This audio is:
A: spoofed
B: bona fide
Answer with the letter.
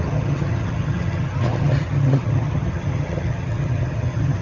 A